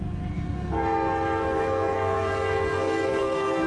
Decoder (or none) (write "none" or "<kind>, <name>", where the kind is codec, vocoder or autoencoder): codec, SNAC